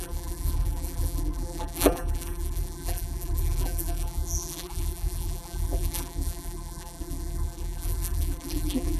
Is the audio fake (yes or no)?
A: yes